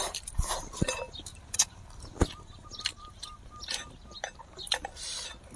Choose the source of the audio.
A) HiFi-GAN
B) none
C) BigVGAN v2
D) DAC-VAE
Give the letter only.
B